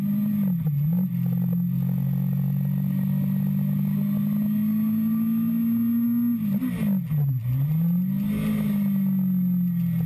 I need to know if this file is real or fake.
real